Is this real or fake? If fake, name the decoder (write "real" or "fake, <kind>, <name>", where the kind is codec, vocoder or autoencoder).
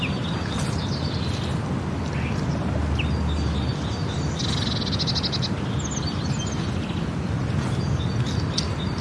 real